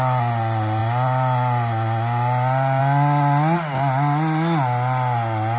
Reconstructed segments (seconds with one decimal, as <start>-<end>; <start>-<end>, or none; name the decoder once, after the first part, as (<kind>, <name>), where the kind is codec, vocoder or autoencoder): none